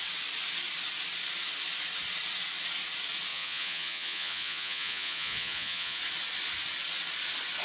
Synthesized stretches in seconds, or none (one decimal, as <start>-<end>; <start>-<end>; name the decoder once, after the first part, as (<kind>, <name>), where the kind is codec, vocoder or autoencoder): 3.3-6.0 (vocoder, Vocos)